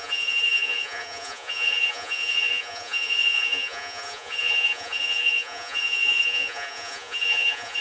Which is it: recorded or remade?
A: remade